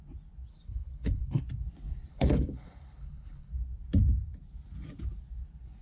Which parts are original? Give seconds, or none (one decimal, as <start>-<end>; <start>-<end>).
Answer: 0.0-0.5; 1.4-2.1; 3.5-5.8